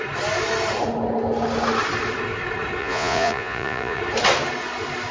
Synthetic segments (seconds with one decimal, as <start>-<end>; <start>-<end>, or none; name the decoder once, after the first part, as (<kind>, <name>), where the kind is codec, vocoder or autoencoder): 2.8-4.0 (vocoder, Vocos)